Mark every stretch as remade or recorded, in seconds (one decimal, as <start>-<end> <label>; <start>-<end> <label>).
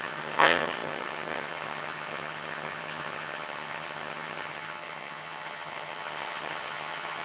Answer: 0.0-7.2 remade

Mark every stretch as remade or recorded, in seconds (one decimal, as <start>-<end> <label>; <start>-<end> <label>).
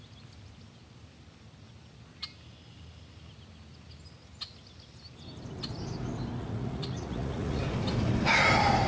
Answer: 0.0-6.4 recorded; 6.4-7.6 remade; 7.6-8.9 recorded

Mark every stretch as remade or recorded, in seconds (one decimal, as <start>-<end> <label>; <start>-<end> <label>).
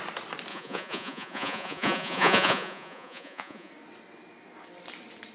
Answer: 0.0-0.5 recorded; 0.5-3.7 remade; 3.7-5.3 recorded